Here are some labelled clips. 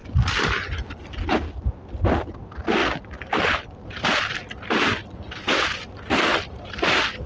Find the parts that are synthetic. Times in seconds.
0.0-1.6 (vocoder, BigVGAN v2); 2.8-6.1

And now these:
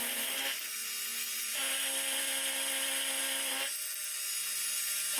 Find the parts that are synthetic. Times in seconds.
none

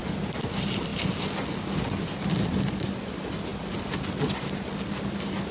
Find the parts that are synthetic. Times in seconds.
none